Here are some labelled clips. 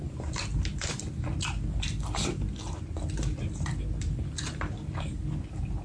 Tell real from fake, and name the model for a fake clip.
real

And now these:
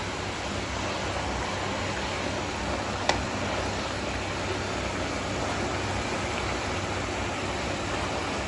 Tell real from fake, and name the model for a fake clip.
real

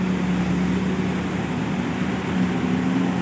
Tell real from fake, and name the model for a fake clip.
real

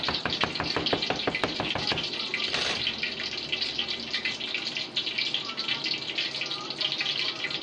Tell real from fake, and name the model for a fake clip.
real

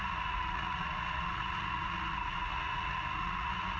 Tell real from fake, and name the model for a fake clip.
fake, vocoder, Vocos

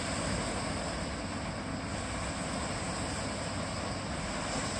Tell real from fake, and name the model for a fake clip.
real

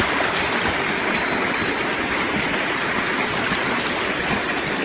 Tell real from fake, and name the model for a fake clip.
real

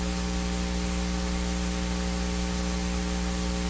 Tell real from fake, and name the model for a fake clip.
real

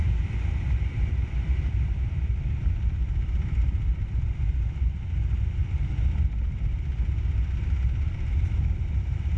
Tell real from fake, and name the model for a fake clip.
fake, vocoder, BigVGAN v2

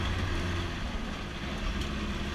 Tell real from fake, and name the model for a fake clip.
real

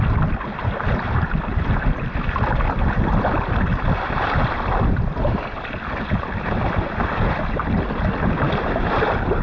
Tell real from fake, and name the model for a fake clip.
real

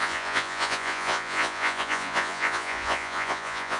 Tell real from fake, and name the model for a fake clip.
fake, vocoder, Vocos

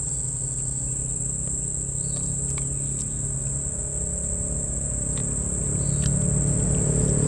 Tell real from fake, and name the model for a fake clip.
real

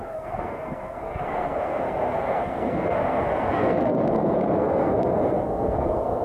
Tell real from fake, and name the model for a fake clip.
fake, codec, SNAC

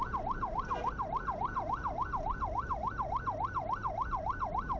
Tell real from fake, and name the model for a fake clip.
real